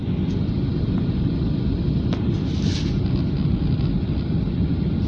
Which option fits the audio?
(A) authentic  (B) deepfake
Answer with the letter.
A